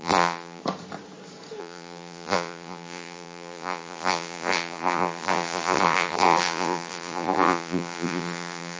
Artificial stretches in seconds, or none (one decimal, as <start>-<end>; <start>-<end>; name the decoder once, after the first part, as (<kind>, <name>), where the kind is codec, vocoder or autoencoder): 0.0-0.6 (vocoder, BigVGAN v2); 1.6-8.8